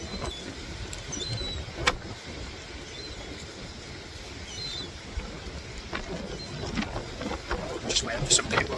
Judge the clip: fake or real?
real